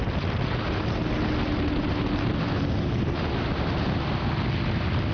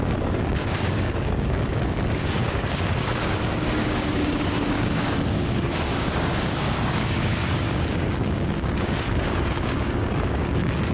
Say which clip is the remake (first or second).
second